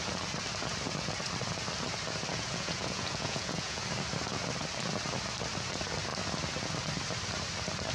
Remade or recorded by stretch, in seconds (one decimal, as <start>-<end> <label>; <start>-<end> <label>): 0.0-2.3 recorded; 2.3-3.8 remade; 3.8-7.9 recorded